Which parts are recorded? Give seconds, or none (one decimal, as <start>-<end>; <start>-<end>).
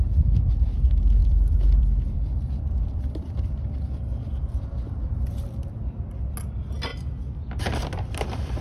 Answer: 0.0-1.2; 3.3-8.6